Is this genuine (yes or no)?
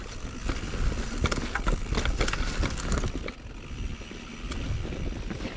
yes